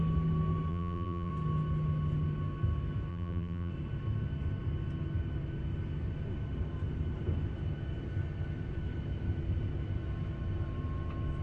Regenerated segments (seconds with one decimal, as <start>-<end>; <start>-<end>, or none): 0.7-1.3; 3.1-3.7